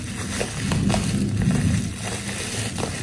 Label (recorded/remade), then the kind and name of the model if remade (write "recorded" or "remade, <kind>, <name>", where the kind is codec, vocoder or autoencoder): recorded